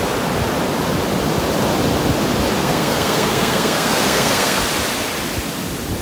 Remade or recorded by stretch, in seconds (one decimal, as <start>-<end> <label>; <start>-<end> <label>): 0.0-2.6 recorded; 2.6-4.6 remade; 4.6-6.0 recorded